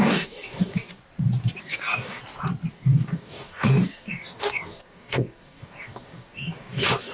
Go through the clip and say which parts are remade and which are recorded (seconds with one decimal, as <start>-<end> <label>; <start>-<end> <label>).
0.0-1.0 remade; 1.0-1.6 recorded; 1.6-2.2 remade; 2.2-2.7 recorded; 2.7-7.1 remade